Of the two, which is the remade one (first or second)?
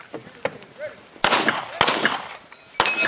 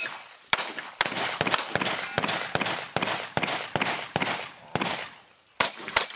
second